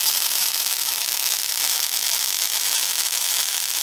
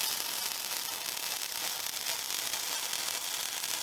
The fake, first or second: first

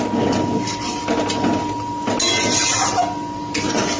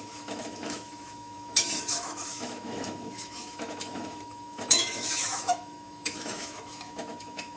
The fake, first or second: second